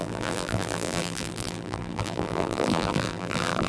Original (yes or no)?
no